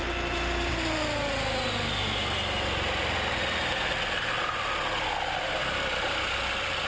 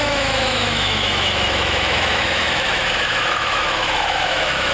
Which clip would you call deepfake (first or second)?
second